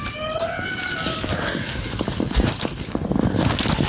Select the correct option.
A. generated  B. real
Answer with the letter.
B